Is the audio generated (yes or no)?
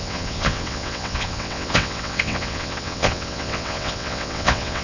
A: yes